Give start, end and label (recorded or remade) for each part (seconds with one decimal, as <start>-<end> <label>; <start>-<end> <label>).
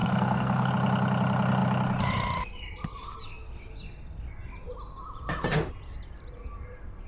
0.0-0.7 remade; 0.7-7.1 recorded